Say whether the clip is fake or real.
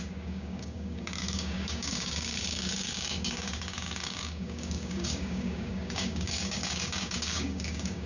fake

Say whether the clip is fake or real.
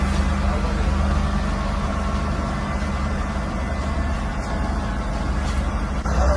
real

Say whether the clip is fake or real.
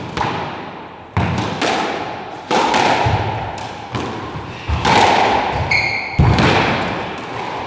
real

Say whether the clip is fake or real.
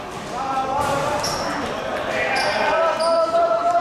real